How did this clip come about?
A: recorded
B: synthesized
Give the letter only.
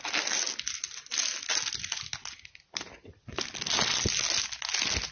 A